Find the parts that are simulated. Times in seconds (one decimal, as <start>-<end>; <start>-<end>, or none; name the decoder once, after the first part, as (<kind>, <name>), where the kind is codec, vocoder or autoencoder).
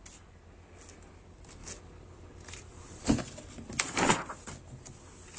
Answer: none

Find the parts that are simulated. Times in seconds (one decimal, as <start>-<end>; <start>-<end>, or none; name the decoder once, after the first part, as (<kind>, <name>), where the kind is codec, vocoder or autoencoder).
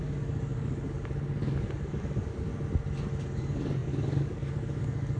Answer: 0.0-2.5 (codec, DAC); 3.4-5.2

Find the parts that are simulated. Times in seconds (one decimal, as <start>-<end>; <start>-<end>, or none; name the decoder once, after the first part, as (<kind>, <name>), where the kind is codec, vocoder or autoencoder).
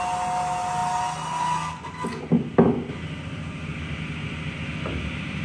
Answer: none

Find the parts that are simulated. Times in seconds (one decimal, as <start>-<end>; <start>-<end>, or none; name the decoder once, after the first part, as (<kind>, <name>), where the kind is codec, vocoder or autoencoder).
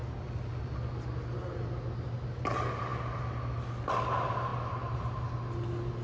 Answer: none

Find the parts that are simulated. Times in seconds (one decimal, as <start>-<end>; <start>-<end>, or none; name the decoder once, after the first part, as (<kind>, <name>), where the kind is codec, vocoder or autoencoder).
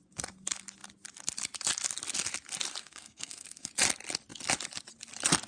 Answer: 2.8-3.7 (codec, SNAC)